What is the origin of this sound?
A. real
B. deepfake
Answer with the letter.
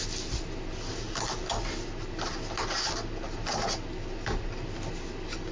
A